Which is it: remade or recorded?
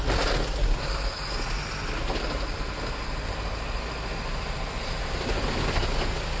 recorded